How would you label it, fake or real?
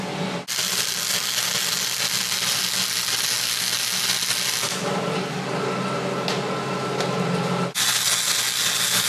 real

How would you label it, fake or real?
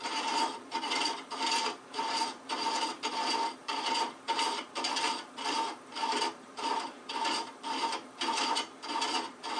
fake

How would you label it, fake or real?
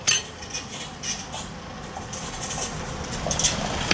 real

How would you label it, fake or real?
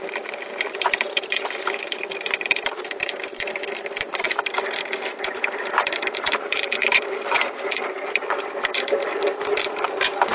fake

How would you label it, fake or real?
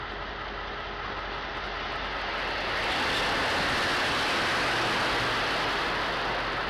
real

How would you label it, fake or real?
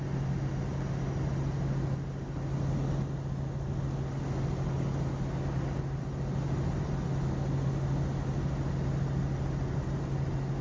real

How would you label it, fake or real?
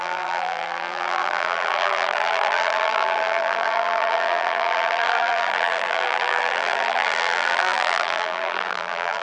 fake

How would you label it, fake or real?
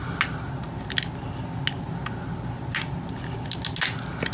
real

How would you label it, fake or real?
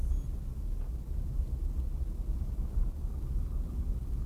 real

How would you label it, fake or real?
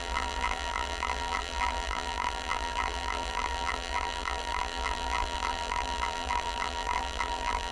fake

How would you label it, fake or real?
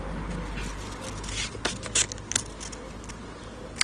real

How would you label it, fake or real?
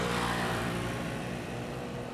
fake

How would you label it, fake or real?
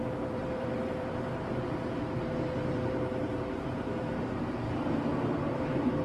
fake